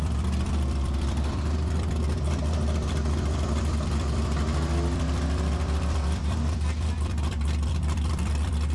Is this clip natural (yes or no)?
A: no